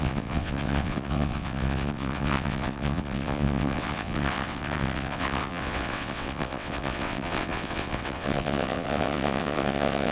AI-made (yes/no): yes